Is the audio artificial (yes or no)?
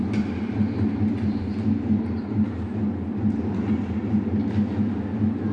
no